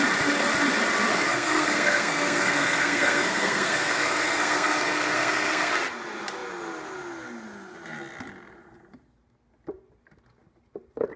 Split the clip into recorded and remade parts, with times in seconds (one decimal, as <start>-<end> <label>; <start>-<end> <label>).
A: 0.0-1.1 recorded; 1.1-5.7 remade; 5.7-11.2 recorded